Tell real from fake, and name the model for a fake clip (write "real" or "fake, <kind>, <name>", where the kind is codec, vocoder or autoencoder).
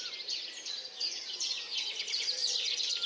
real